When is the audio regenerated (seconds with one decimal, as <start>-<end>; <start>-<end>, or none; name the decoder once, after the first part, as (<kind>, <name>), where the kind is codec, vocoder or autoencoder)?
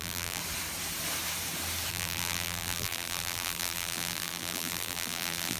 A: 0.0-0.4 (vocoder, BigVGAN v2); 1.9-5.6